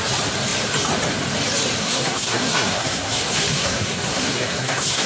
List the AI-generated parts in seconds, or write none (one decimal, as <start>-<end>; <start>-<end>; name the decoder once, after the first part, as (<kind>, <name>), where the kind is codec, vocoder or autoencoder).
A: 1.8-5.1 (codec, SNAC)